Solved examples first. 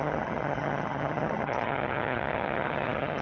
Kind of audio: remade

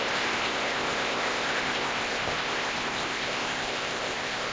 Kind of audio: remade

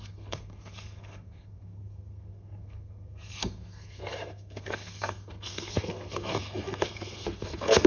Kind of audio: remade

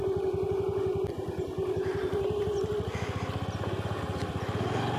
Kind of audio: recorded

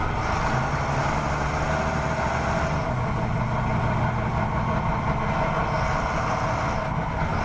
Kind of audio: recorded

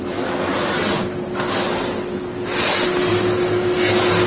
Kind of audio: recorded